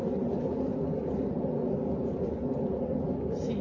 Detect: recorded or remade recorded